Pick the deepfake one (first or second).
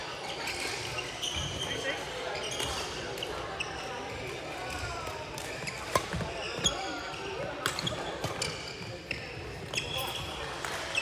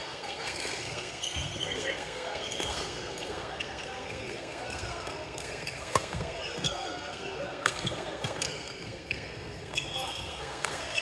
second